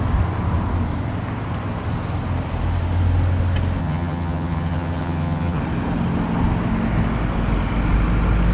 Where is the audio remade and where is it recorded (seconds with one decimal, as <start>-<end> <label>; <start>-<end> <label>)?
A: 0.0-3.8 recorded; 3.8-5.6 remade; 5.6-8.5 recorded